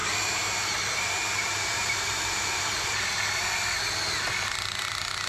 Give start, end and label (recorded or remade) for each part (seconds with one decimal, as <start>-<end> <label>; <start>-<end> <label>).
0.0-3.2 remade; 3.2-5.3 recorded